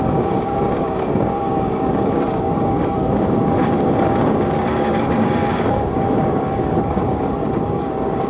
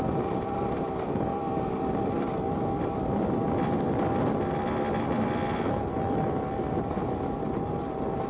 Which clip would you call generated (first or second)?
first